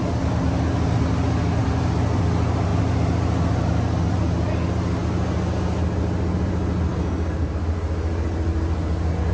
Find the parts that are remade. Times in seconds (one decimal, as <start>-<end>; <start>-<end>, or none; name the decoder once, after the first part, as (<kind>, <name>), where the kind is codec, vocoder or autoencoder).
6.9-7.6 (codec, SNAC)